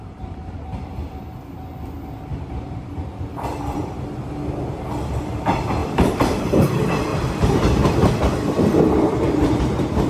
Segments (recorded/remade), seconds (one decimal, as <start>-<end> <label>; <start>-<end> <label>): 0.0-2.3 recorded; 2.3-4.2 remade; 4.2-5.8 recorded; 5.8-6.4 remade; 6.4-7.1 recorded; 7.1-9.6 remade; 9.6-10.1 recorded